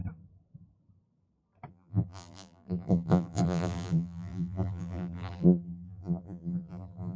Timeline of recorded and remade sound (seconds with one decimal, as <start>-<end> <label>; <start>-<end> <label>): 0.0-1.7 recorded; 1.7-7.2 remade